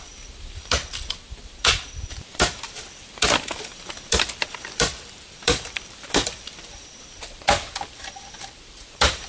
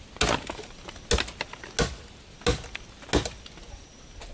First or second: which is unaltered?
second